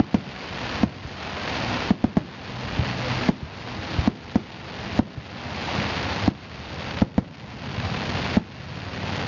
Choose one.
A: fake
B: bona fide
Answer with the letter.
B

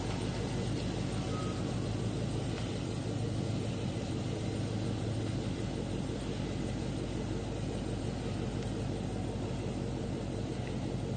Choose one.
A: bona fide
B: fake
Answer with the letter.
A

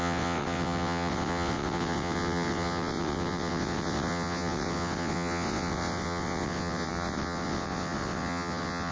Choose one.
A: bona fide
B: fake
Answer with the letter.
B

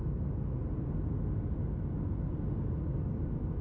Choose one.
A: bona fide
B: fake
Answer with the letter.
A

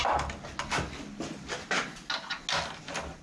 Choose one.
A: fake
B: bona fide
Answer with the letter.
B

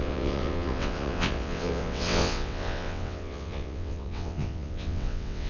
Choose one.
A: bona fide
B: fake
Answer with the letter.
B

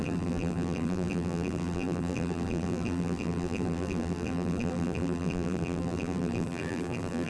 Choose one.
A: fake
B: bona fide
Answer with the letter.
A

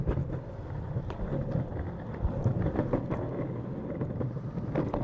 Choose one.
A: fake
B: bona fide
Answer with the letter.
B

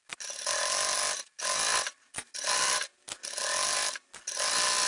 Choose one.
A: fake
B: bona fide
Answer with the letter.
B